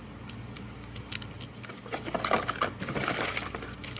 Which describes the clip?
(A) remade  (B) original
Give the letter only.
B